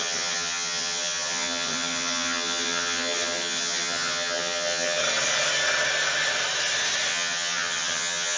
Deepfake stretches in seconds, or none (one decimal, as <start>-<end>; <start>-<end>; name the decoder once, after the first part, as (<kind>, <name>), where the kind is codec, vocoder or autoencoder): 0.0-5.0 (vocoder, HiFi-GAN); 7.1-8.4

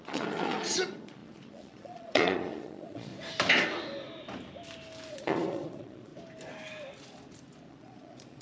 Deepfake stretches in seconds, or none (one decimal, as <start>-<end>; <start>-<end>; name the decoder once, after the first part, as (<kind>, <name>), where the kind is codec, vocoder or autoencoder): 0.0-3.1 (vocoder, Vocos); 5.1-6.1; 7.7-8.4

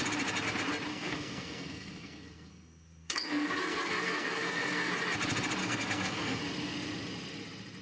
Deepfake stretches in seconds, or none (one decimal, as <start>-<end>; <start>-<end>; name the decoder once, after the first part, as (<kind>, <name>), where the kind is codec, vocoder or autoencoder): 0.9-4.9 (codec, SNAC); 5.6-6.4

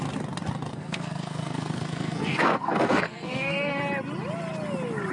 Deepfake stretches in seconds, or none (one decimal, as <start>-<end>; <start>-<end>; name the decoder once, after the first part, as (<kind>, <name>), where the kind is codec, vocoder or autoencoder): 0.7-3.8 (codec, SNAC)